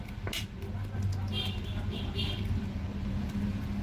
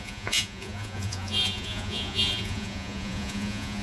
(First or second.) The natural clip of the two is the first